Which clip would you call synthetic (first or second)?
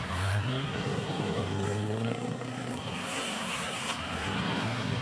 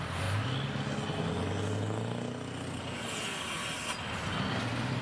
first